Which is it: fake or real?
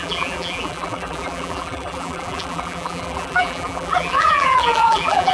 fake